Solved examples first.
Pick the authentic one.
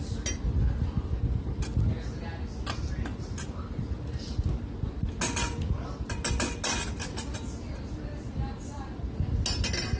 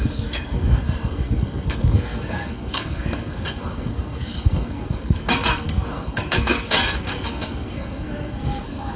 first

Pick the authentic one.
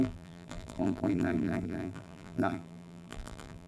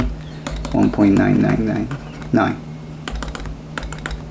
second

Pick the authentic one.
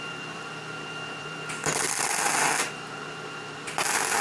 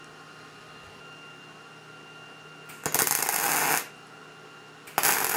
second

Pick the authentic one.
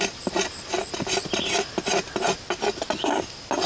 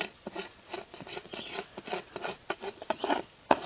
first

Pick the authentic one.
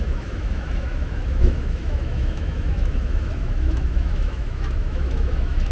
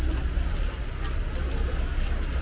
second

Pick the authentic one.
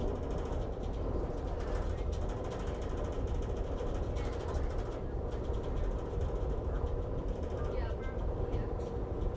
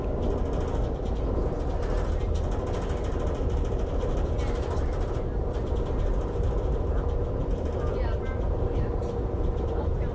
second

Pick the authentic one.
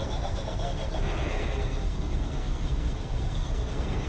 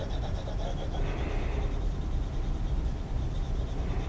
second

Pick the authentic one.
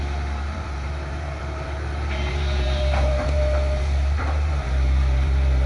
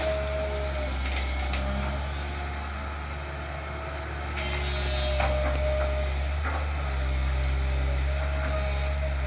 second